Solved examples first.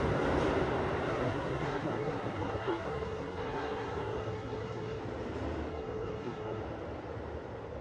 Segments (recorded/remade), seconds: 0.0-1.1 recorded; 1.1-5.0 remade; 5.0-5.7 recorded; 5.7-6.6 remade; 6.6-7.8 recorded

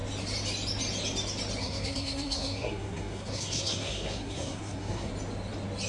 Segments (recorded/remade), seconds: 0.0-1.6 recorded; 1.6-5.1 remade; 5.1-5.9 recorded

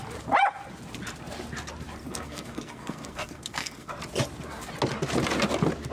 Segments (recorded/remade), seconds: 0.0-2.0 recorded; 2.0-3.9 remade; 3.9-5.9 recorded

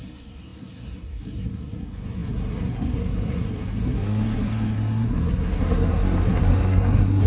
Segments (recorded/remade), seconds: 0.0-7.3 remade